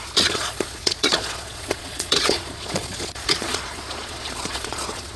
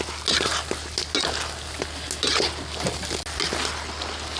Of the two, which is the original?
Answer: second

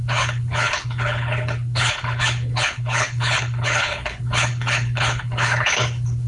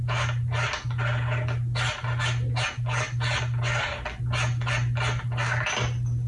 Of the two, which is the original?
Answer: second